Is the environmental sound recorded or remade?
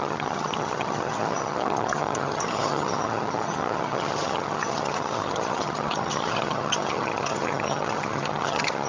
remade